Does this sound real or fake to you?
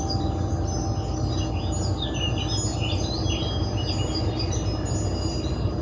real